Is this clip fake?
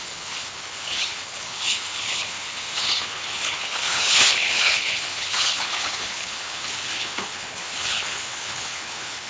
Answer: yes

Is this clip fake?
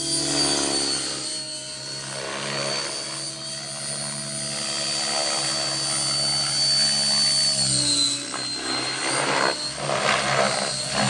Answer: no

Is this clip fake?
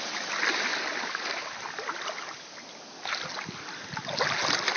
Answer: no